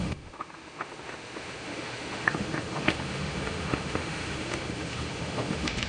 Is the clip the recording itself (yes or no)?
no